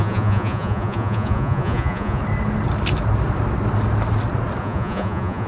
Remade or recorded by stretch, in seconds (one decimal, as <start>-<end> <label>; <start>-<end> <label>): 0.0-2.2 remade; 2.2-4.6 recorded; 4.6-5.5 remade